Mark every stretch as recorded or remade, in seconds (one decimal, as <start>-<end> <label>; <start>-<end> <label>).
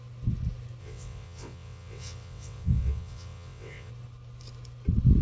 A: 0.0-0.8 recorded; 0.8-3.9 remade; 3.9-5.2 recorded